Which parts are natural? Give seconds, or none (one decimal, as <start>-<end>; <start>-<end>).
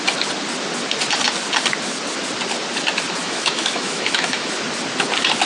0.0-3.2; 4.6-5.5